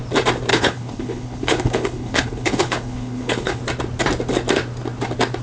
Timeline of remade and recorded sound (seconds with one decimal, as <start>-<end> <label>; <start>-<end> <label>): 0.0-0.5 recorded; 0.5-3.6 remade; 3.6-5.4 recorded